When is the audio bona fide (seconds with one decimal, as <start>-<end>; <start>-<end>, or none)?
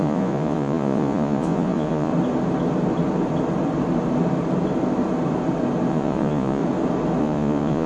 2.1-5.9; 6.6-7.2